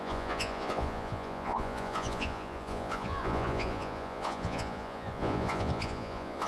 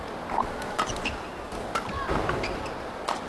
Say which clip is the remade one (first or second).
first